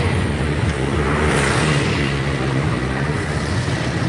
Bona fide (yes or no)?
no